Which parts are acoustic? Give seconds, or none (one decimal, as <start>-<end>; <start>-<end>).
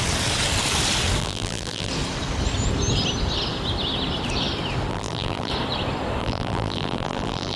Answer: 0.0-1.2; 1.9-4.9; 5.5-6.2